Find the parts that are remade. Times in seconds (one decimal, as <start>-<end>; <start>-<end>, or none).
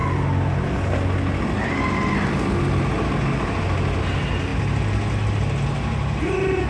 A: none